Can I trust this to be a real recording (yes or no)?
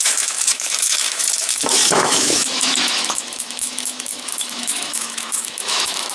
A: no